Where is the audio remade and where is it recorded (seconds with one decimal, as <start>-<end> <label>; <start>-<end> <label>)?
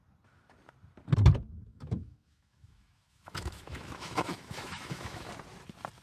0.0-1.7 recorded; 1.7-5.3 remade; 5.3-6.0 recorded